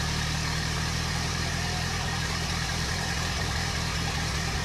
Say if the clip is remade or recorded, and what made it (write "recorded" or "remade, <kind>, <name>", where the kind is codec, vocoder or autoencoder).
remade, vocoder, BigVGAN v2